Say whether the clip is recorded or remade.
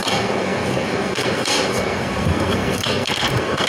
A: remade